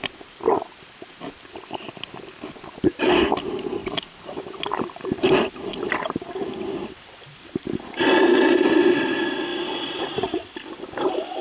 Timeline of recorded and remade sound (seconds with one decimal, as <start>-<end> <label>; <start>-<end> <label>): 0.0-3.8 recorded; 3.8-7.2 remade; 7.2-9.5 recorded; 9.5-10.2 remade; 10.2-11.4 recorded